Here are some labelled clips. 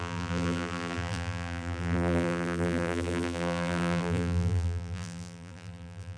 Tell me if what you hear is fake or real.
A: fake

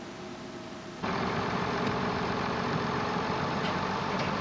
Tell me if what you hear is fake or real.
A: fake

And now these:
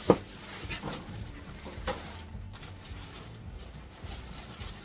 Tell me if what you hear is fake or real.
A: fake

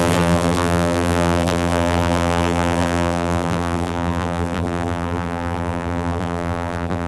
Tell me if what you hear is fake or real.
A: fake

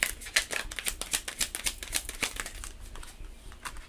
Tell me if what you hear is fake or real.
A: real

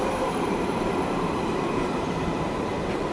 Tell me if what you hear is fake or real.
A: fake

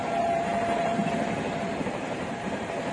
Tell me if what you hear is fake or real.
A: fake